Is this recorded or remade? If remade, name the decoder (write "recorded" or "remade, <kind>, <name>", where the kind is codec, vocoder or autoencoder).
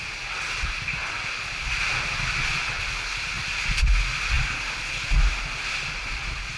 recorded